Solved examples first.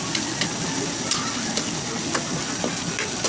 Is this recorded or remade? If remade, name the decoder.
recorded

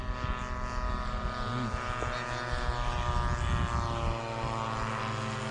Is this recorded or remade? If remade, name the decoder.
recorded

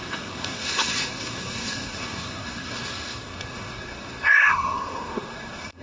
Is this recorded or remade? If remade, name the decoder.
remade, codec, SNAC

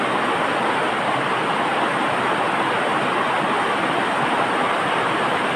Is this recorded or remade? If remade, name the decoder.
recorded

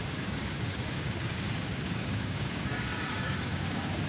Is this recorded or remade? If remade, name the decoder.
remade, codec, DAC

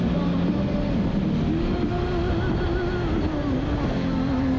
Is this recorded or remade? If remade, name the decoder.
recorded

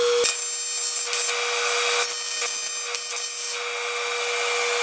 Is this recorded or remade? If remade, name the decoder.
recorded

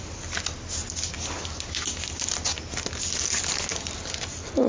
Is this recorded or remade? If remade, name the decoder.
recorded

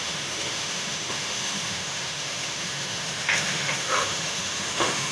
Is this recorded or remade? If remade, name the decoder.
remade, autoencoder, DAC-VAE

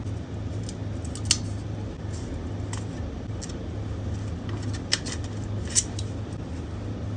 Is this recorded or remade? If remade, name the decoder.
recorded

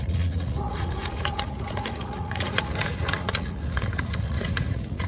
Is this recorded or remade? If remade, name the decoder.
remade, vocoder, Vocos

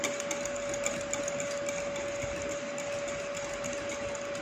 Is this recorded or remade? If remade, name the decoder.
recorded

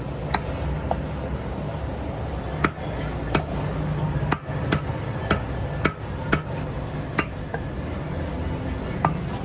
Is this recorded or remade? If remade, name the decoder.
recorded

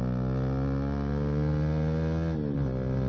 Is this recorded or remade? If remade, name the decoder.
recorded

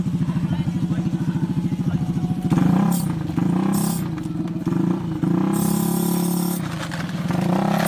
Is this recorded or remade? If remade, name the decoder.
recorded